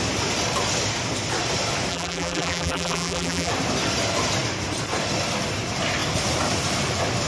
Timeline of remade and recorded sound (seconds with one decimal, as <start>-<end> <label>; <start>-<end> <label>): 0.0-1.9 recorded; 1.9-3.5 remade; 3.5-7.3 recorded